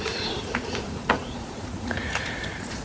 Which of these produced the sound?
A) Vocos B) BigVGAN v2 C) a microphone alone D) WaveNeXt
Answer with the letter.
A